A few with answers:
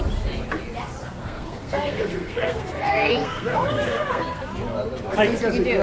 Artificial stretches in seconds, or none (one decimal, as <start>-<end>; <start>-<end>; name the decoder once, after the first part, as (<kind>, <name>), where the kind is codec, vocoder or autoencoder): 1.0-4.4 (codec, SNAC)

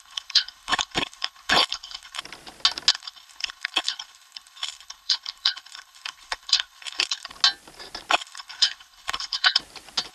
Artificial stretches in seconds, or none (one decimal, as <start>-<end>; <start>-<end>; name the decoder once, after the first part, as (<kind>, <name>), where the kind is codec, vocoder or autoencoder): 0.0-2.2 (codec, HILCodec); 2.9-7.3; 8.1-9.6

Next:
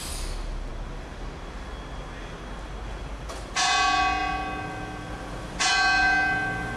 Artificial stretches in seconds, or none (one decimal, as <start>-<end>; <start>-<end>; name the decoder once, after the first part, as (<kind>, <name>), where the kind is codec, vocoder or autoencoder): none

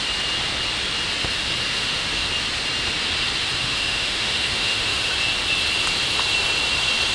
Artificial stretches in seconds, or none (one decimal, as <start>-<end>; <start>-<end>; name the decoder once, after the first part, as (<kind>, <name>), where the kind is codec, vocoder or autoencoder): 1.7-2.3 (autoencoder, DAC-VAE); 3.6-5.1